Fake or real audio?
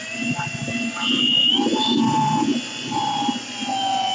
fake